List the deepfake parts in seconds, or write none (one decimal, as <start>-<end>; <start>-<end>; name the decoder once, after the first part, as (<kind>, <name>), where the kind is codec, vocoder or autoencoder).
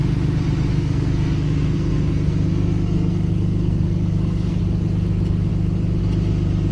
0.7-4.6 (codec, SNAC)